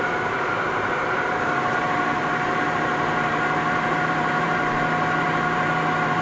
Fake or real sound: fake